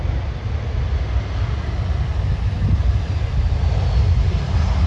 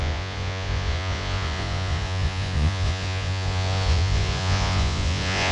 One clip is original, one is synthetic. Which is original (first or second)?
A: first